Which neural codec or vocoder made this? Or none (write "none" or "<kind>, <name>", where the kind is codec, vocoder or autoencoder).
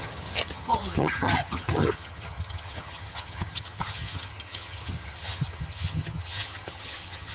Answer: vocoder, HiFi-GAN